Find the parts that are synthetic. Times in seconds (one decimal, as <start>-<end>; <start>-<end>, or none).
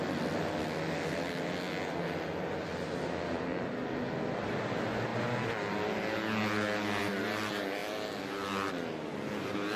none